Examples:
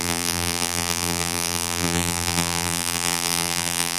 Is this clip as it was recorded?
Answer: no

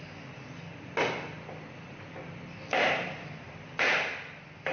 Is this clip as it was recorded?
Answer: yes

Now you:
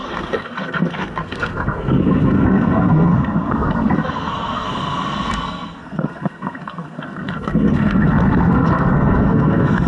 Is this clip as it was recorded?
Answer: no